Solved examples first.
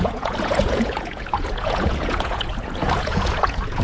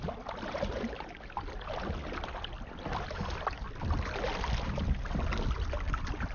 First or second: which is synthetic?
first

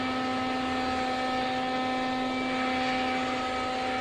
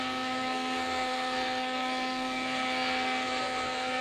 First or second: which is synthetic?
second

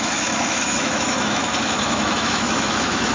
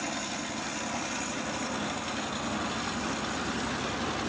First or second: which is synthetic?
first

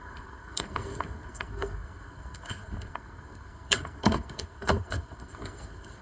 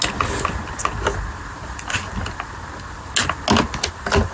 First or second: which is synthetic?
first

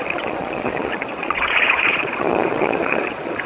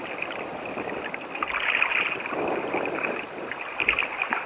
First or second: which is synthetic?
first